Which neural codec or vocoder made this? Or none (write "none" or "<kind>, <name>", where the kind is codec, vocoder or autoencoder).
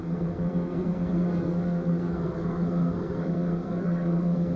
codec, SNAC